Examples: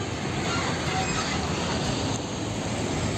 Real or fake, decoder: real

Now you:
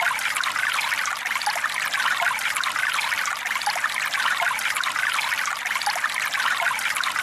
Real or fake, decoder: fake, vocoder, BigVGAN v2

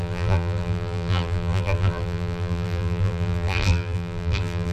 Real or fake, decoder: fake, vocoder, BigVGAN v2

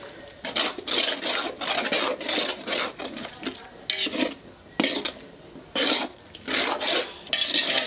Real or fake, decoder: real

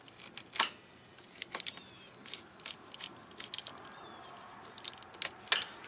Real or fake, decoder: real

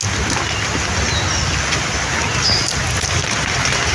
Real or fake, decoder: real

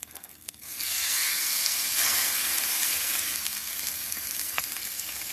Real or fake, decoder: fake, codec, SNAC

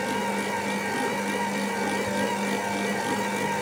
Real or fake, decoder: real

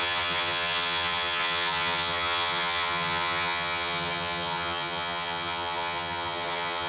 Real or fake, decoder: fake, vocoder, HiFi-GAN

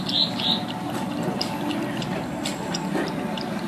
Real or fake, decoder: real